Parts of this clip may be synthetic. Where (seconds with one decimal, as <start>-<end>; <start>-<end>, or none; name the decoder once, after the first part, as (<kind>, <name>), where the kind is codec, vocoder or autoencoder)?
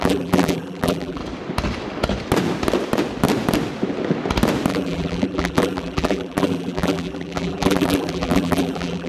0.0-1.2 (vocoder, BigVGAN v2); 4.7-9.1